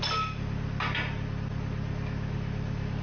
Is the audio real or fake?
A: real